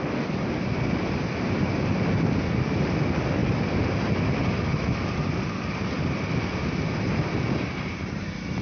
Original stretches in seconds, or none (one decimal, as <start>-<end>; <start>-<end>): 0.0-8.6